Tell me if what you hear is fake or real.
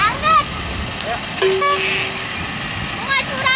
real